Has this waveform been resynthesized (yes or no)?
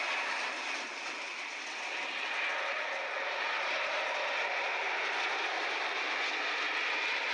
no